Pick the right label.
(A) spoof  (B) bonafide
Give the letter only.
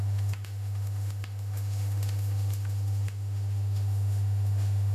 A